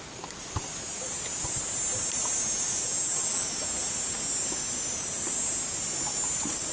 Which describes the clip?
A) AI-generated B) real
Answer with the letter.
B